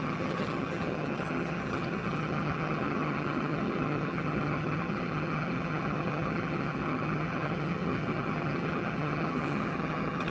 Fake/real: fake